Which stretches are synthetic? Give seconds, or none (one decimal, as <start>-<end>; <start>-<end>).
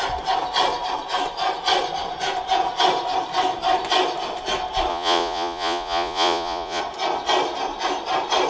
4.9-6.8